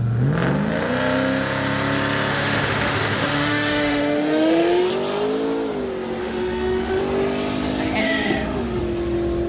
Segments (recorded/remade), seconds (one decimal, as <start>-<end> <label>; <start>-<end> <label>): 0.0-2.3 recorded; 2.3-4.9 remade; 4.9-6.2 recorded; 6.2-7.0 remade; 7.0-8.0 recorded; 8.0-8.8 remade; 8.8-9.5 recorded